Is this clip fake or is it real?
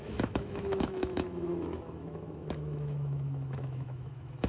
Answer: fake